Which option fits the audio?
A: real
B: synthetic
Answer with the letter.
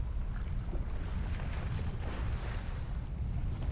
A